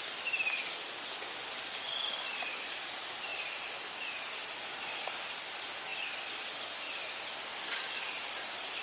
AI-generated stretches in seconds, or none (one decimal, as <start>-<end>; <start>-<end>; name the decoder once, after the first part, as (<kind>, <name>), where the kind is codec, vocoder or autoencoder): none